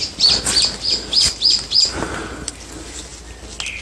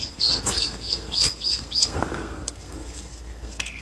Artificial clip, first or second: second